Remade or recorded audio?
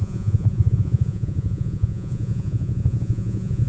remade